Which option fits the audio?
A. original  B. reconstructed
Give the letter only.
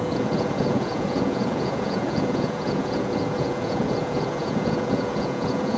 B